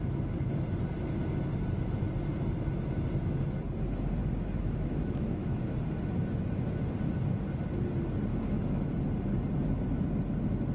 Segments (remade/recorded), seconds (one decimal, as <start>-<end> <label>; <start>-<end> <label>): 0.0-4.2 recorded; 4.2-5.6 remade; 5.6-8.3 recorded; 8.3-8.9 remade; 8.9-10.7 recorded